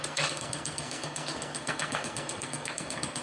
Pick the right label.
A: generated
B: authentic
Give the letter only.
A